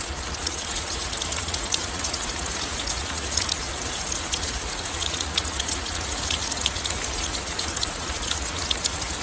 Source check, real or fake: fake